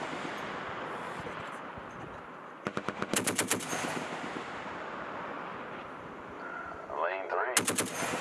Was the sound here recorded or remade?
recorded